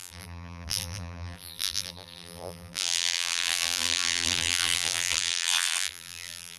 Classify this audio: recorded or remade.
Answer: remade